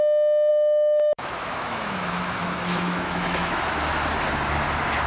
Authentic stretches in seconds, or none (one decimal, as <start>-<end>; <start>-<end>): 0.0-0.5; 3.6-5.1